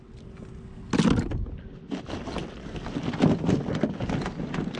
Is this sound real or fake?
real